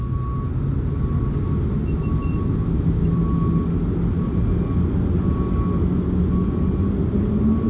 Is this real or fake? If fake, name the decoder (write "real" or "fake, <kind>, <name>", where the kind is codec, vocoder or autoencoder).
real